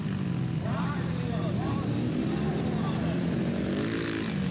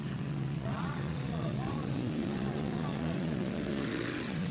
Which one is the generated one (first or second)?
second